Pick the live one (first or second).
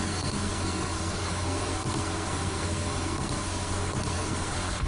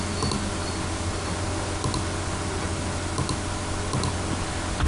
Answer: second